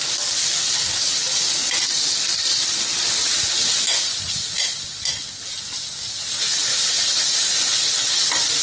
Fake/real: real